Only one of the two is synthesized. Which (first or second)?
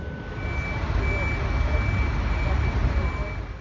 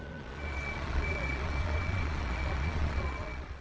second